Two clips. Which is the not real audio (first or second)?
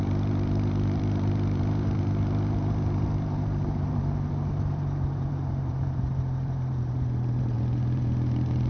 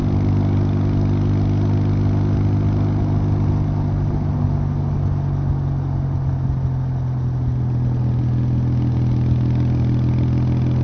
first